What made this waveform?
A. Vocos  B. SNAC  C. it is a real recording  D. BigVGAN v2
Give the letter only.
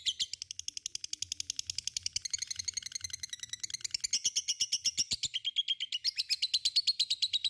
C